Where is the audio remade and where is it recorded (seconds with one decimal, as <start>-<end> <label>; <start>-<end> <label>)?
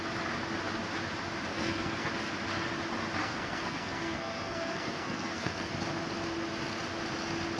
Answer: 0.0-1.5 recorded; 1.5-2.1 remade; 2.1-3.2 recorded; 3.2-5.7 remade; 5.7-7.6 recorded